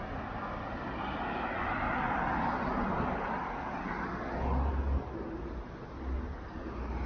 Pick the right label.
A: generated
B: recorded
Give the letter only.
B